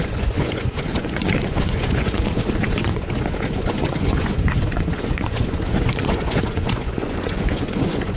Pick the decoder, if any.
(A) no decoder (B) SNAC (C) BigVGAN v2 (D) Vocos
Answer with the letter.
D